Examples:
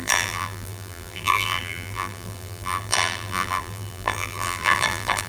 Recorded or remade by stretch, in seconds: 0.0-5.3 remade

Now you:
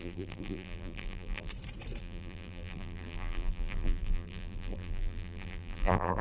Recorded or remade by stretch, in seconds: 0.0-1.5 remade; 1.5-2.0 recorded; 2.0-6.2 remade

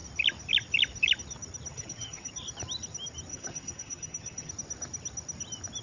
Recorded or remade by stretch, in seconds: 0.0-1.7 recorded; 1.7-2.3 remade; 2.3-3.3 recorded; 3.3-4.5 remade; 4.5-5.8 recorded

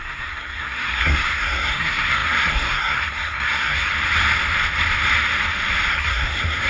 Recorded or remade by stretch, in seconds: 0.0-3.9 remade; 3.9-5.9 recorded; 5.9-6.7 remade

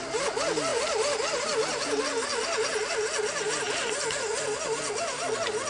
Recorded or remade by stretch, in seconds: 0.0-5.7 recorded

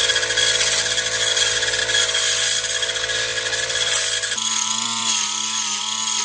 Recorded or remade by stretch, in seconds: 0.0-3.3 recorded; 3.3-5.8 remade; 5.8-6.2 recorded